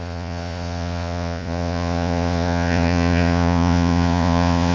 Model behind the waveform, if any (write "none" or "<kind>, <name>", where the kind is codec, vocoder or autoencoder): vocoder, Vocos